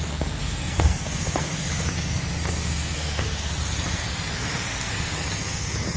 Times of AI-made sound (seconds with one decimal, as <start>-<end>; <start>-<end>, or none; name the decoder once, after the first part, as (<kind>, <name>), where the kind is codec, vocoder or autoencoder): 0.0-6.0 (codec, SNAC)